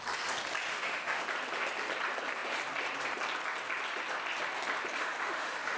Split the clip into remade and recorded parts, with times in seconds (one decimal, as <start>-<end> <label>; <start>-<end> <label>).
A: 0.0-0.7 recorded; 0.7-1.2 remade; 1.2-5.0 recorded; 5.0-5.8 remade